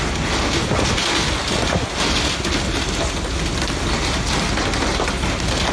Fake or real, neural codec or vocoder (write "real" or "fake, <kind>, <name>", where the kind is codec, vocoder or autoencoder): real